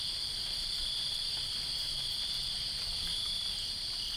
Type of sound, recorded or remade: recorded